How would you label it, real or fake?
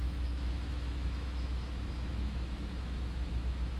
fake